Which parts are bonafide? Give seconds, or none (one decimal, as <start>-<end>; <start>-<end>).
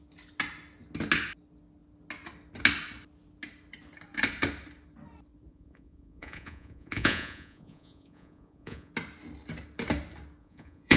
0.0-5.5; 8.9-10.4